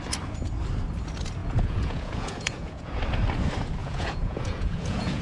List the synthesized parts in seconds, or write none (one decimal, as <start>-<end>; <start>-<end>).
1.4-3.0; 3.8-5.2